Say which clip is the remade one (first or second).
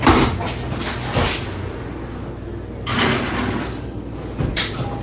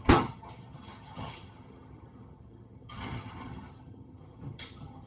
second